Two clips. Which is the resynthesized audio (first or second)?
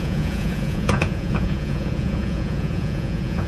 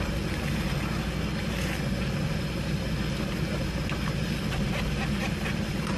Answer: first